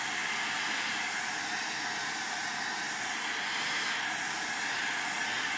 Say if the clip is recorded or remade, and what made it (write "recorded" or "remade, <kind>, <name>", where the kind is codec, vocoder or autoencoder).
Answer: recorded